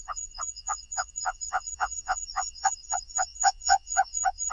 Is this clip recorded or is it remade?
remade